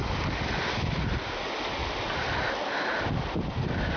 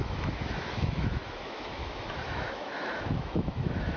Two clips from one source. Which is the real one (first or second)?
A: first